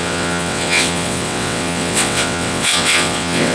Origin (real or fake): fake